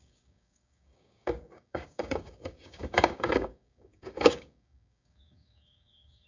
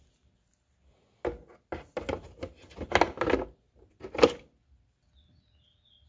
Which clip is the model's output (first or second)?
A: first